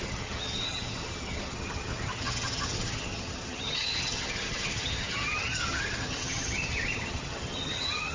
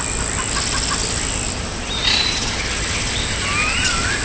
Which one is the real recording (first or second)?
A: second